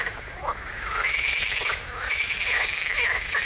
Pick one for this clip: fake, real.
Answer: fake